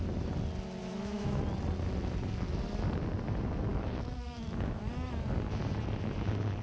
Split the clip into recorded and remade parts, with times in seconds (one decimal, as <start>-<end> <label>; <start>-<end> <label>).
0.0-0.8 recorded; 0.8-1.4 remade; 1.4-3.7 recorded; 3.7-4.8 remade; 4.8-6.6 recorded